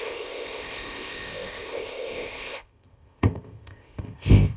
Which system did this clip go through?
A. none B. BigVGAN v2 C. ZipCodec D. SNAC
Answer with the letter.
C